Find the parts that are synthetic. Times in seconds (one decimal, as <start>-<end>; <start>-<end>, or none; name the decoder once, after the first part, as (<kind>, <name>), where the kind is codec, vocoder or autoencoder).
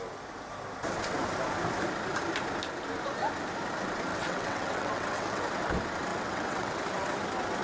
4.1-5.4 (vocoder, WaveNeXt); 6.1-6.7